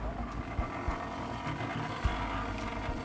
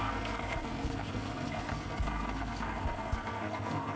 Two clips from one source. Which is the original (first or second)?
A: first